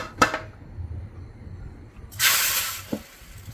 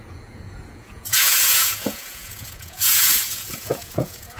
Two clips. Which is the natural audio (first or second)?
first